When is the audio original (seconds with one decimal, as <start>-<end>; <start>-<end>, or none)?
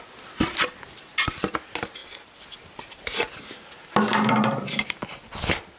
0.0-5.8